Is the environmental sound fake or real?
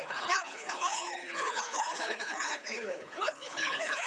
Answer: fake